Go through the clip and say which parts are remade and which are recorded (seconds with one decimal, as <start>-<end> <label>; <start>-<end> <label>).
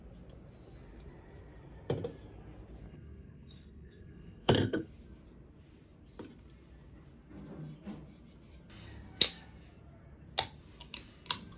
0.0-2.8 recorded; 2.8-4.9 remade; 4.9-11.6 recorded